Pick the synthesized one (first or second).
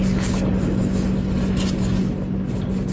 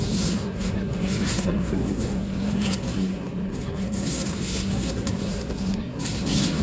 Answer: second